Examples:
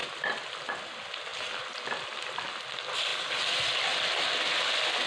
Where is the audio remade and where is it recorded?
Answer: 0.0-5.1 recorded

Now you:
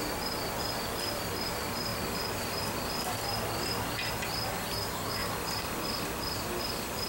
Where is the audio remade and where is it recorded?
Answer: 0.0-7.1 recorded

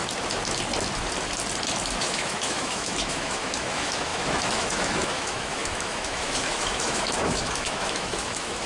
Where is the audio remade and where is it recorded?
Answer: 0.0-2.0 recorded; 2.0-8.7 remade

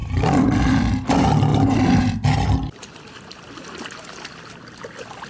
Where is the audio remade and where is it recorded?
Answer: 0.0-5.3 recorded